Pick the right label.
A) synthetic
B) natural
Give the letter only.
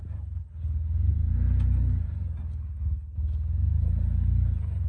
B